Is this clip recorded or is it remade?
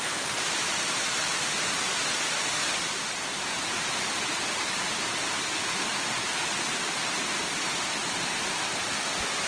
recorded